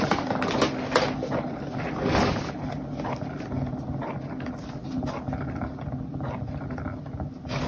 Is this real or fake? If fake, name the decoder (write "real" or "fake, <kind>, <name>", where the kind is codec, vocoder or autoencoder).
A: real